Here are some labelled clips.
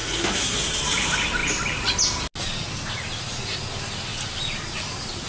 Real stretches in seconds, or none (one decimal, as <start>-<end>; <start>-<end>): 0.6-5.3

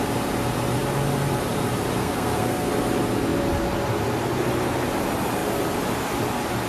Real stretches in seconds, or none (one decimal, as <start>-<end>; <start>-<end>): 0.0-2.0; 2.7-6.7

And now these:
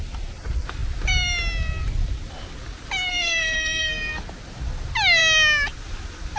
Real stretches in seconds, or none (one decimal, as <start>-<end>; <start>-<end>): 0.0-3.1; 4.2-6.4

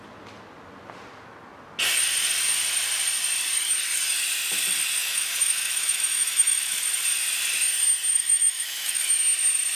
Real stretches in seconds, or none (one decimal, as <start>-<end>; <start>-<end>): 0.0-5.0; 6.8-8.1; 9.0-9.8

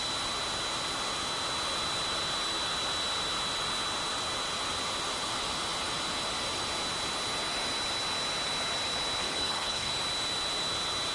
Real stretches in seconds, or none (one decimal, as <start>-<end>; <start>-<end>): 0.0-9.2; 9.9-11.1

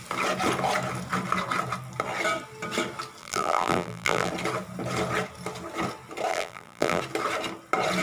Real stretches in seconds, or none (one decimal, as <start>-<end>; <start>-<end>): 0.0-3.2; 4.3-6.3; 7.0-8.0

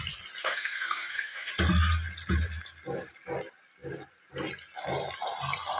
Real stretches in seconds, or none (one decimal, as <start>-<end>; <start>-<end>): 0.0-0.4; 1.5-5.8

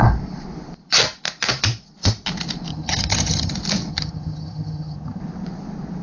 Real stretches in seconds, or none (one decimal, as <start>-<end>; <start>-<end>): 0.0-2.7; 3.5-3.9; 5.2-6.0